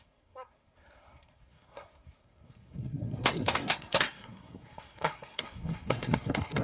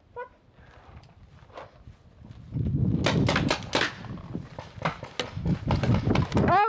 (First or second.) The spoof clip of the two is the first